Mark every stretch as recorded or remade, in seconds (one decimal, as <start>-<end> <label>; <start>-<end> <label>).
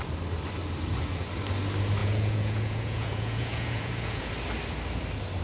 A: 0.0-2.0 recorded; 2.0-4.3 remade; 4.3-5.4 recorded